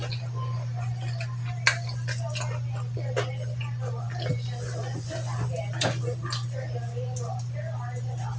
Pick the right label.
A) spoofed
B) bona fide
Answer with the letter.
B